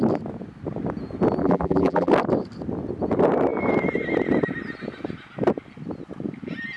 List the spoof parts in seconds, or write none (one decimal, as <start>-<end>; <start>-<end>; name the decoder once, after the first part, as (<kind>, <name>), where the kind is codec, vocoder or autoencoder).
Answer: 1.4-2.1 (vocoder, BigVGAN v2)